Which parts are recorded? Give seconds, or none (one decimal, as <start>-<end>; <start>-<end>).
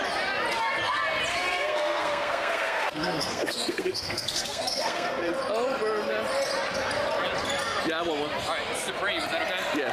0.0-1.3; 5.3-9.9